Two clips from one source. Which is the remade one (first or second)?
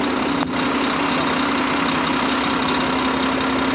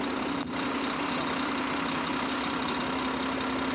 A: second